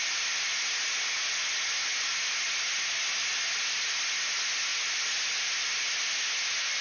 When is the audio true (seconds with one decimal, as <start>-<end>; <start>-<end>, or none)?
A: 0.0-6.8